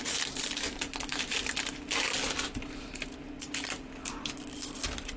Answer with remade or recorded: recorded